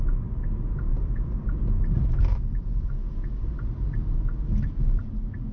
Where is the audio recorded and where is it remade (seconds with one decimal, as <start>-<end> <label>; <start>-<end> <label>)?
0.0-0.9 recorded; 0.9-1.4 remade; 1.4-2.3 recorded; 2.3-2.9 remade; 2.9-5.5 recorded